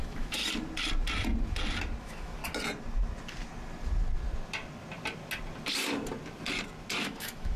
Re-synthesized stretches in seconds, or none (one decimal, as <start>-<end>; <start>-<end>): 0.0-0.4; 2.0-2.4; 7.0-7.6